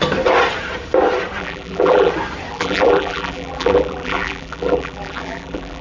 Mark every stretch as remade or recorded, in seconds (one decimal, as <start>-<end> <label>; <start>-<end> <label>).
0.0-1.4 recorded; 1.4-2.1 remade; 2.1-2.5 recorded; 2.5-5.8 remade